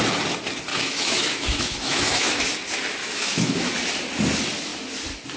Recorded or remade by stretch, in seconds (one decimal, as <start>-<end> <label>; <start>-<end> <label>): 0.0-0.7 recorded; 0.7-2.4 remade; 2.4-3.0 recorded; 3.0-3.7 remade; 3.7-5.4 recorded